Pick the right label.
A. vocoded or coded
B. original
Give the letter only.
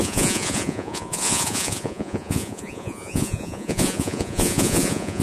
A